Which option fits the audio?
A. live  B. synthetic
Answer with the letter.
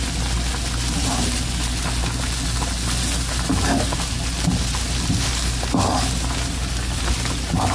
A